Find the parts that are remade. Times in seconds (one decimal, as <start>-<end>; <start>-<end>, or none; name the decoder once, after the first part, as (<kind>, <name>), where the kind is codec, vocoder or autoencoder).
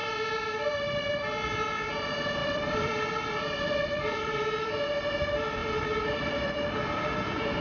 2.4-4.9 (vocoder, BigVGAN v2); 5.6-6.9